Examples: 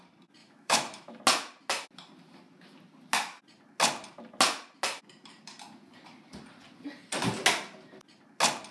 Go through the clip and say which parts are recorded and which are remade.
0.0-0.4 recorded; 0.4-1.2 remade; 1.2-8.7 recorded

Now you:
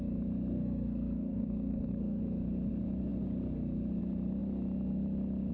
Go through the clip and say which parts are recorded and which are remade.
0.0-0.5 recorded; 0.5-2.2 remade; 2.2-5.5 recorded

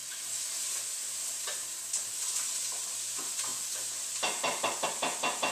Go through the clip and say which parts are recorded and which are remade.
0.0-0.5 remade; 0.5-5.5 recorded